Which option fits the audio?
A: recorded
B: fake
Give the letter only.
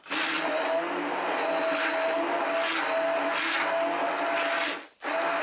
A